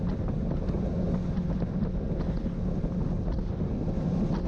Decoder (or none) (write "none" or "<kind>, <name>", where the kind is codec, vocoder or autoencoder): none